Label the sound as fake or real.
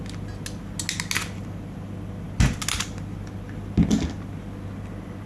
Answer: real